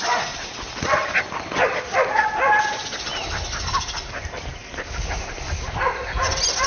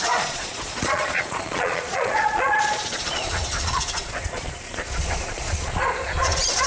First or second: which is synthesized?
second